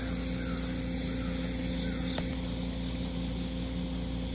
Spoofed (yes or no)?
no